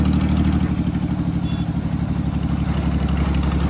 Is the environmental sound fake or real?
real